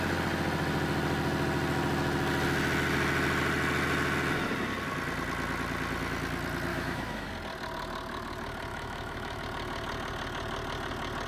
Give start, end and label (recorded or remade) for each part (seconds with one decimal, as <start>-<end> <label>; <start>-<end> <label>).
0.0-6.7 recorded; 6.7-7.3 remade; 7.3-8.7 recorded; 8.7-9.4 remade; 9.4-11.3 recorded